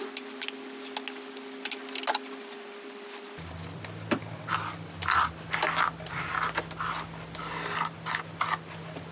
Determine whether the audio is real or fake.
real